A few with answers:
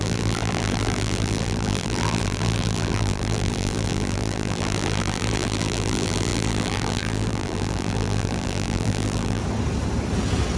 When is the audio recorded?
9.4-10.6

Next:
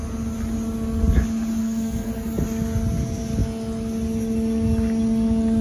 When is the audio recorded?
0.0-1.6; 2.1-5.6

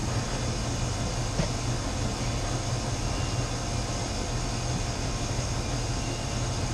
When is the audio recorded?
0.0-6.7

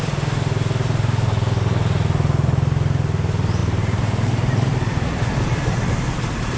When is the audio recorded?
0.0-3.6

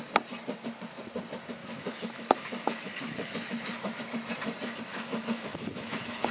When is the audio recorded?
0.0-1.6; 4.0-4.9